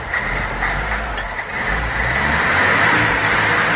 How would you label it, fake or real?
real